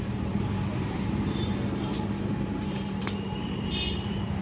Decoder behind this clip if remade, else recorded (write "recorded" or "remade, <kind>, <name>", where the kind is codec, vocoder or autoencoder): remade, vocoder, BigVGAN v2